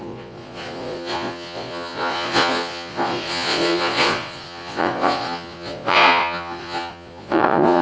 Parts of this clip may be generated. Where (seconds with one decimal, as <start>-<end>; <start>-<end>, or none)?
0.0-7.8